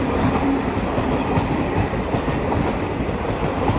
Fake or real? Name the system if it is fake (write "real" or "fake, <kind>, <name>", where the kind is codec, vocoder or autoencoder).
real